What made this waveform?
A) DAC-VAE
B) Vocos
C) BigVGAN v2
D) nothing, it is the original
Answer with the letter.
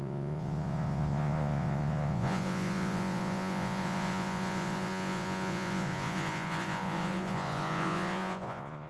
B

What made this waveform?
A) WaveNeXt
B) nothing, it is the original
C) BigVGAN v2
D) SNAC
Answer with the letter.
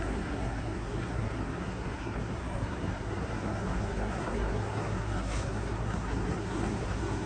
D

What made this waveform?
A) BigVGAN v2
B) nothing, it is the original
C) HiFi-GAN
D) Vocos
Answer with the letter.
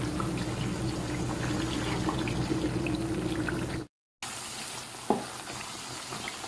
B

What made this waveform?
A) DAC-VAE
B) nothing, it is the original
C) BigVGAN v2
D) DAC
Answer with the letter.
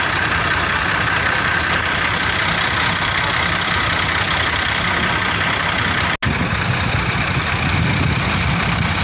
B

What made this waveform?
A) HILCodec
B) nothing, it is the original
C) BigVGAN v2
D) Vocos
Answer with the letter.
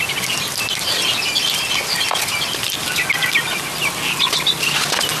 B